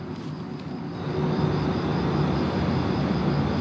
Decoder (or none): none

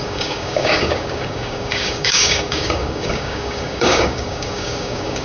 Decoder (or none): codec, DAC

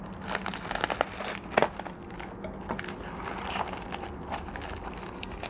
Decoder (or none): none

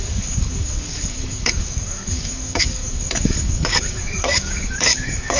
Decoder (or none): codec, DAC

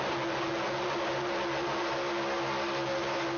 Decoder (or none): none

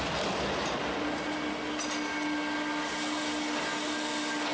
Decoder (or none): none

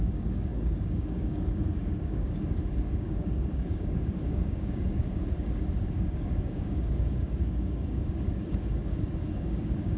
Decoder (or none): codec, DAC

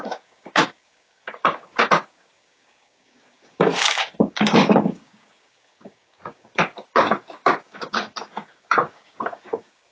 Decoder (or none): codec, DAC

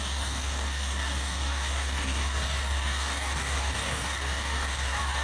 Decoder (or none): codec, DAC